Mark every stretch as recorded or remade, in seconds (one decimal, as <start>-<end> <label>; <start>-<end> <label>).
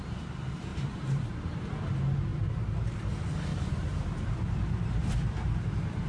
0.0-0.7 recorded; 0.7-1.7 remade; 1.7-2.3 recorded; 2.3-3.1 remade; 3.1-3.5 recorded; 3.5-6.1 remade